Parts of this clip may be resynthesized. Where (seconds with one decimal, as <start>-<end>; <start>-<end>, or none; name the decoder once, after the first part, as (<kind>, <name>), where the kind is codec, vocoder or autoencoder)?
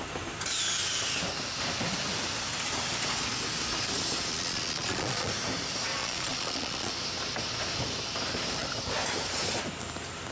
4.3-5.3 (vocoder, Vocos); 6.0-6.9